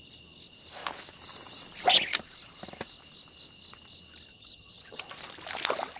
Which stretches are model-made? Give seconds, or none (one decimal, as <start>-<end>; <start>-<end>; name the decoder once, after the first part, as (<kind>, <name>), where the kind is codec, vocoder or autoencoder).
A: 4.3-5.0 (vocoder, HiFi-GAN)